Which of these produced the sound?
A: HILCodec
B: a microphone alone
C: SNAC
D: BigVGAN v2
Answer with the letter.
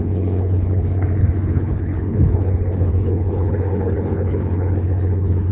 A